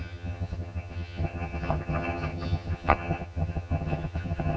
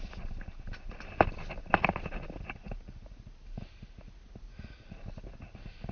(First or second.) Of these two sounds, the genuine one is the second